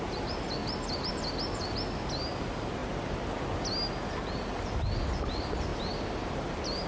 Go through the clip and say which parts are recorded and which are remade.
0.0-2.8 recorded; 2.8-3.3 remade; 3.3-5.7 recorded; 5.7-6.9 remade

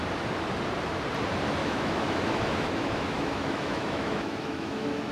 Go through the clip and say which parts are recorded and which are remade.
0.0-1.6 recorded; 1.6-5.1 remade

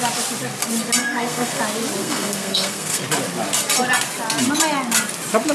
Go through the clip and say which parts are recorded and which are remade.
0.0-1.0 recorded; 1.0-1.6 remade; 1.6-2.0 recorded; 2.0-3.0 remade; 3.0-5.5 recorded

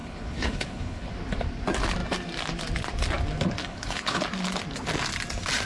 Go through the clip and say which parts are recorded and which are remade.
0.0-1.1 remade; 1.1-3.6 recorded; 3.6-4.2 remade; 4.2-5.7 recorded

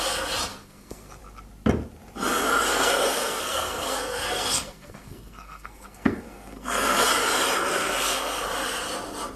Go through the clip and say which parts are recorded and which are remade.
0.0-0.5 recorded; 0.5-1.2 remade; 1.2-2.7 recorded; 2.7-7.1 remade; 7.1-7.7 recorded; 7.7-8.5 remade; 8.5-9.4 recorded

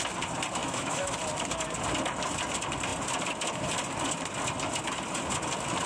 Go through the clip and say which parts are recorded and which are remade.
0.0-0.6 recorded; 0.6-1.1 remade; 1.1-5.9 recorded